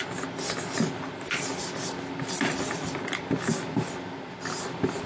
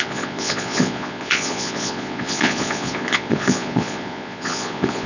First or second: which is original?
first